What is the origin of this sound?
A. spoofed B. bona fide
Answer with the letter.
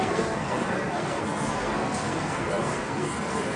A